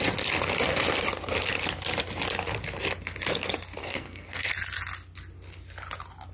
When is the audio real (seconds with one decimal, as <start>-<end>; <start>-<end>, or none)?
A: 0.0-3.8; 4.5-6.3